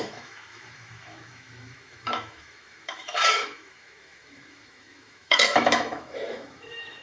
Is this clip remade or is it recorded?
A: remade